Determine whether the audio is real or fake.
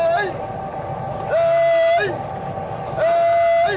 real